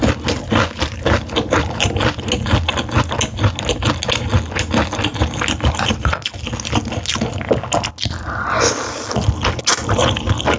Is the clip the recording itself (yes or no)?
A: yes